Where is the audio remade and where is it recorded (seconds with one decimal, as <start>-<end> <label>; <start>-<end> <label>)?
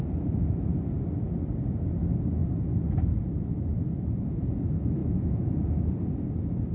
0.0-5.0 recorded; 5.0-5.6 remade; 5.6-6.7 recorded